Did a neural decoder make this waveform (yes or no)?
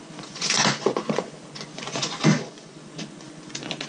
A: yes